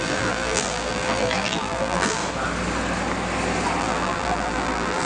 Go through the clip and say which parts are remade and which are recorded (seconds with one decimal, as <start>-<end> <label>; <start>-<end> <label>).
0.0-2.2 remade; 2.2-3.8 recorded; 3.8-5.1 remade